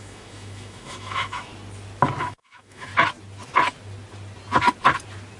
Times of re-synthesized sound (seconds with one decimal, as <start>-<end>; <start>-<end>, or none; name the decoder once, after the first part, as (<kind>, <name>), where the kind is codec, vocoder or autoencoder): 0.0-1.5 (autoencoder, DAC-VAE); 2.2-2.9